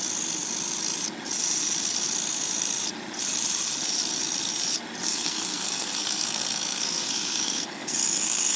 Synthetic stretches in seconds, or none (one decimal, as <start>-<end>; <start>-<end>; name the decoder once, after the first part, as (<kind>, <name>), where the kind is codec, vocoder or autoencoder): 5.0-8.6 (codec, SNAC)